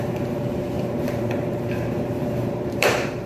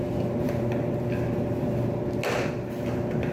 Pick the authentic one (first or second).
second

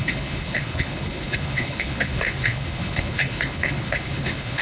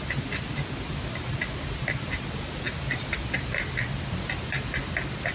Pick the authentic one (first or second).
second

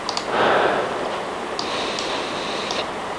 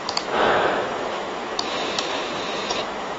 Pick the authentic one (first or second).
first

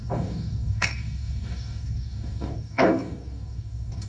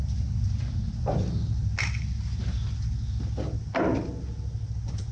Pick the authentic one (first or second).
second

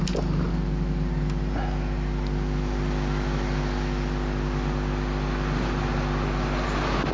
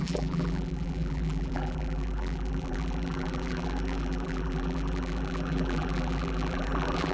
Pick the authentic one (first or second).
first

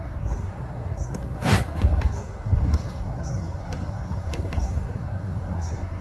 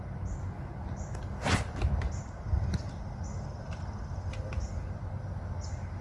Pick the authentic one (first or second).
second